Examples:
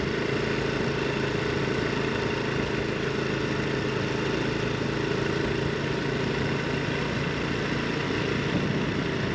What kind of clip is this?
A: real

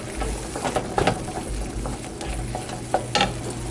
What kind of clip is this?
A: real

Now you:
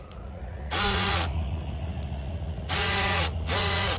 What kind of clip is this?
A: fake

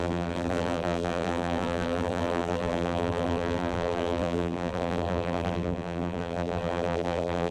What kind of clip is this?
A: fake